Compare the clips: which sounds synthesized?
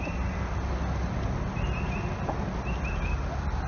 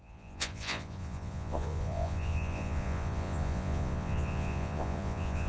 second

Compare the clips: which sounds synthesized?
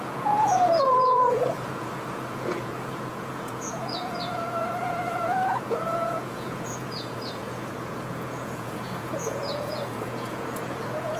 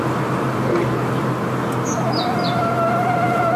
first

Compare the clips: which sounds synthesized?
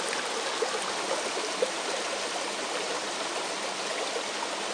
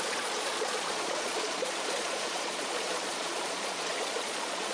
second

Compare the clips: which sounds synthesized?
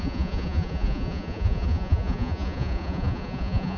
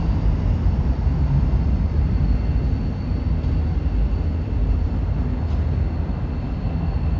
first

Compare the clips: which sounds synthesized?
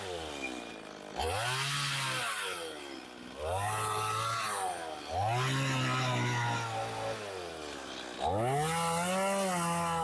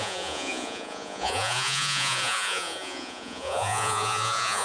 second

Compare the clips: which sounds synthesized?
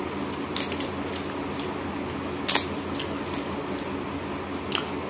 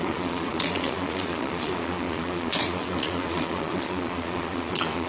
second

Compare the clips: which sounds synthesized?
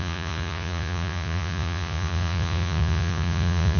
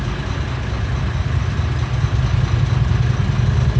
first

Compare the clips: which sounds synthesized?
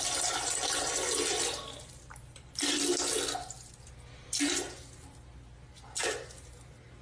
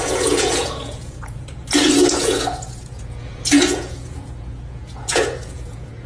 second